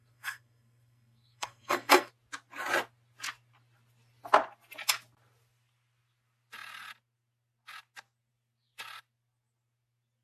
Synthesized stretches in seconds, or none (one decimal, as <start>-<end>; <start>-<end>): 0.0-2.1